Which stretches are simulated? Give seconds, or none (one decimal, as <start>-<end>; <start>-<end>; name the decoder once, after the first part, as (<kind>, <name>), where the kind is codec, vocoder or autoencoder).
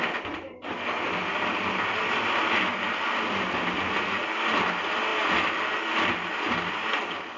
none